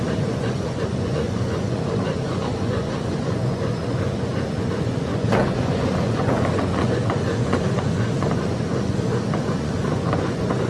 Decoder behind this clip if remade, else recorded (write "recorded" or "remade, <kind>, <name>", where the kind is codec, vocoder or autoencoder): remade, vocoder, Vocos